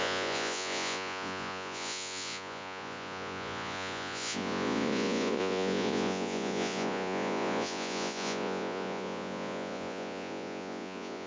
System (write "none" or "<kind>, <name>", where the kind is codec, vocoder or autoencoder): vocoder, Vocos